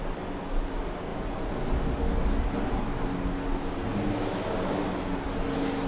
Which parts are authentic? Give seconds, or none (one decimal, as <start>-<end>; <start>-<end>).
0.0-5.9